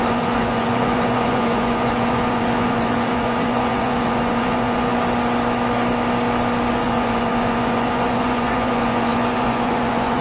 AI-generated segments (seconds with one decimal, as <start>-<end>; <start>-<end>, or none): 0.0-4.9; 6.7-10.2